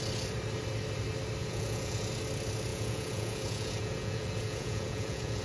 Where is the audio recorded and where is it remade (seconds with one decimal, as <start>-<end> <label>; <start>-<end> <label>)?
0.0-1.4 recorded; 1.4-2.1 remade; 2.1-2.7 recorded; 2.7-5.4 remade